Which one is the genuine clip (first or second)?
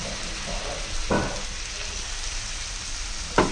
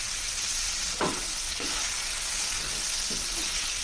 first